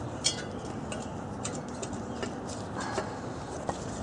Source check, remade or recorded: remade